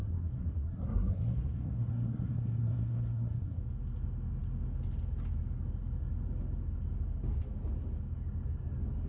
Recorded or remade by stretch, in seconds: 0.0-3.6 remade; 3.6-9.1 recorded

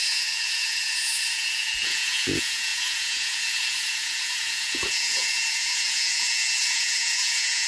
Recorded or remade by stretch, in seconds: 0.0-7.7 remade

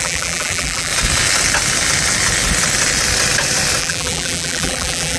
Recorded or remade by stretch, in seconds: 0.0-0.9 remade; 0.9-3.8 recorded; 3.8-5.2 remade

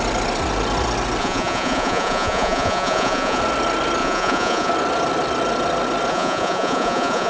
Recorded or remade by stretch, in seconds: 0.0-1.2 recorded; 1.2-3.4 remade; 3.4-4.0 recorded; 4.0-4.7 remade; 4.7-6.1 recorded; 6.1-7.3 remade

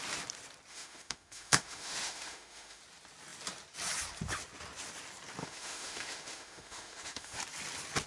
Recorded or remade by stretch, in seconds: 0.0-0.7 recorded; 0.7-2.8 remade; 2.8-5.4 recorded; 5.4-7.4 remade; 7.4-8.1 recorded